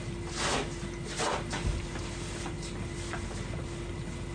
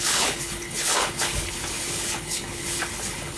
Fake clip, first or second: second